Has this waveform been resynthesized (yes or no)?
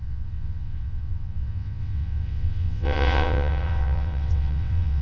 yes